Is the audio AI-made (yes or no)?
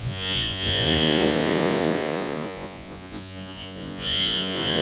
yes